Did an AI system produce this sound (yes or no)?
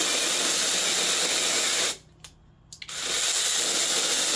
no